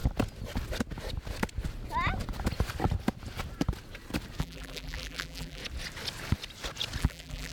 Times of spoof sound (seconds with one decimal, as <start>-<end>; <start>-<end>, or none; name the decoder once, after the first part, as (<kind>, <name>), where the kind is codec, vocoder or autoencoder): 4.4-5.6 (vocoder, BigVGAN v2); 7.0-7.5